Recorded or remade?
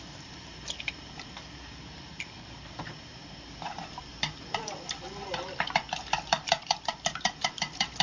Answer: remade